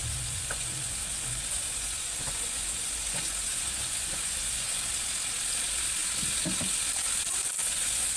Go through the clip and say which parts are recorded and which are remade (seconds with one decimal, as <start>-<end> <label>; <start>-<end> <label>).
0.0-4.9 remade; 4.9-7.6 recorded; 7.6-8.2 remade